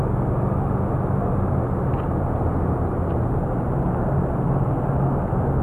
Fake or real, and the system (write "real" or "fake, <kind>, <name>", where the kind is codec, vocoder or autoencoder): real